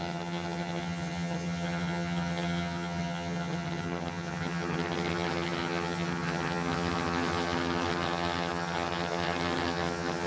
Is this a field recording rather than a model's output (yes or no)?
no